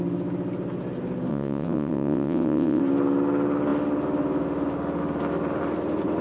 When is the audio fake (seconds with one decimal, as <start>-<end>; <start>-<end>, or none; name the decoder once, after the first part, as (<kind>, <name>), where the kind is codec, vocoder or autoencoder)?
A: 1.3-2.8 (vocoder, WaveNeXt)